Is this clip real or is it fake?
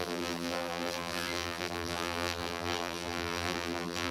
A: fake